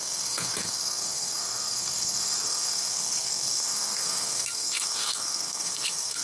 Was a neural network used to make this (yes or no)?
yes